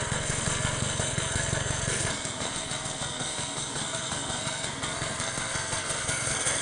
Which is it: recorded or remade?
remade